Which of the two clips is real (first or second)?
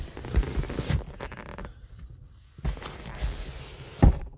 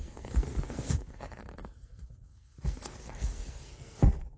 first